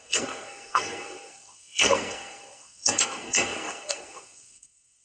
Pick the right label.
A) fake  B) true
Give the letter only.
A